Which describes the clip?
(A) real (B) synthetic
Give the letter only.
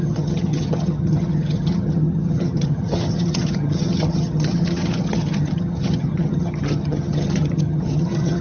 B